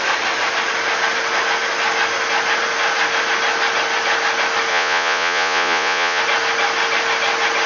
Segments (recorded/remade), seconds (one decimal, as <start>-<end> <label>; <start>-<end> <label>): 0.0-4.7 recorded; 4.7-6.2 remade; 6.2-7.7 recorded